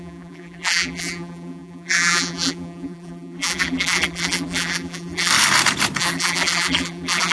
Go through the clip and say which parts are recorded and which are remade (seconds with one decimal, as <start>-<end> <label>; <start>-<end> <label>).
0.0-5.3 remade; 5.3-6.0 recorded; 6.0-7.3 remade

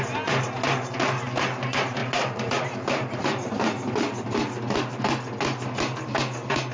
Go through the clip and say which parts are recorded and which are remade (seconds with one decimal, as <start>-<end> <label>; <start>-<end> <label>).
0.0-2.0 recorded; 2.0-5.0 remade; 5.0-6.7 recorded

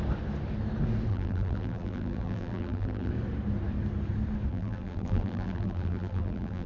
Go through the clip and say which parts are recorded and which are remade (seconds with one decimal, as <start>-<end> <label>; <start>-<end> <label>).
0.0-1.1 recorded; 1.1-3.1 remade; 3.1-4.5 recorded; 4.5-6.7 remade

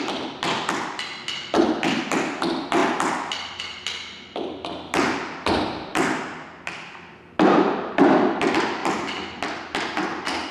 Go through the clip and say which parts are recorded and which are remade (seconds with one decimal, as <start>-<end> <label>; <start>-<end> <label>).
0.0-10.5 recorded

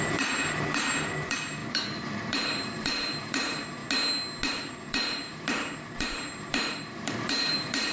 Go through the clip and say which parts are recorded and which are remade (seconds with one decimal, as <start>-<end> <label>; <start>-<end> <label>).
0.0-3.8 remade; 3.8-4.5 recorded; 4.5-7.9 remade

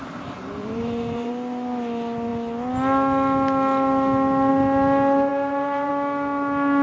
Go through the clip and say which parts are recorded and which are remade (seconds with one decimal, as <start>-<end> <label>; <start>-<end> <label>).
0.0-0.6 recorded; 0.6-1.3 remade; 1.3-5.3 recorded; 5.3-5.9 remade; 5.9-6.8 recorded